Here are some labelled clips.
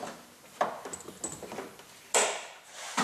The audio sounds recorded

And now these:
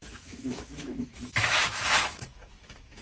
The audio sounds remade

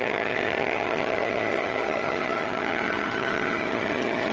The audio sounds remade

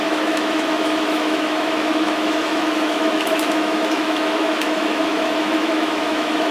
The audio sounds remade